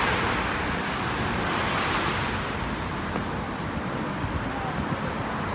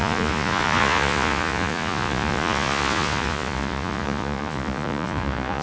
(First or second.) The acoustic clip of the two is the first